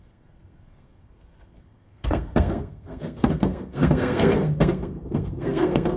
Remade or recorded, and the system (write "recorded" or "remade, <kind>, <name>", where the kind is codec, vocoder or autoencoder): remade, codec, SNAC